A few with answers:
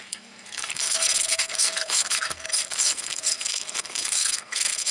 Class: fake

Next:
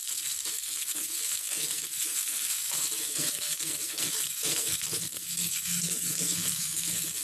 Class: fake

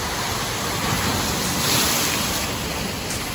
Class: real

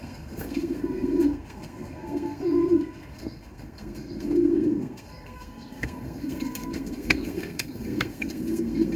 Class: fake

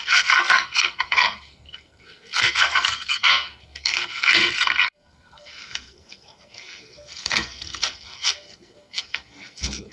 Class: fake